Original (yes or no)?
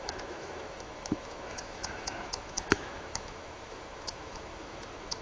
no